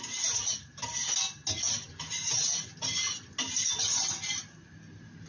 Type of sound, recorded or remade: recorded